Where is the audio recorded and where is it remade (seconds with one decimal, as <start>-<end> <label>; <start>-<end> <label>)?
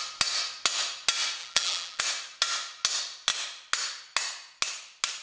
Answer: 0.0-1.4 recorded; 1.4-2.0 remade; 2.0-5.2 recorded